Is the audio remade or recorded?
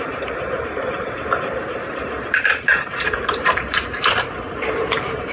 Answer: remade